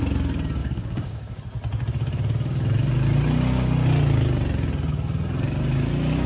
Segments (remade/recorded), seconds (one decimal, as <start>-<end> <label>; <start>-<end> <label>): 0.0-0.6 recorded; 0.6-1.4 remade; 1.4-6.3 recorded